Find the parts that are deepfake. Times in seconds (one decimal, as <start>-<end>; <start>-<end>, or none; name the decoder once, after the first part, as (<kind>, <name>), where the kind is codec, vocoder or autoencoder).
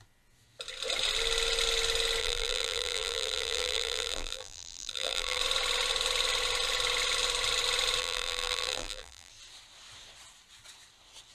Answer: 2.2-5.4 (vocoder, BigVGAN v2); 8.0-9.3